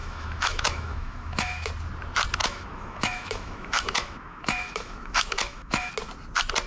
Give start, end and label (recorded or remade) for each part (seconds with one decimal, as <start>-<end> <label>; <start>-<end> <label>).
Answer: 0.0-1.7 remade; 1.7-2.4 recorded; 2.4-5.9 remade; 5.9-6.7 recorded